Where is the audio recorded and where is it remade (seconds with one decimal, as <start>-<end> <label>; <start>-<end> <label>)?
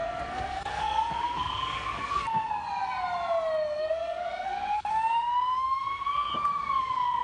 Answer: 0.0-2.6 remade; 2.6-3.8 recorded; 3.8-6.3 remade; 6.3-6.8 recorded; 6.8-7.2 remade